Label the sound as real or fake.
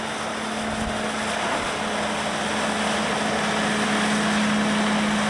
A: real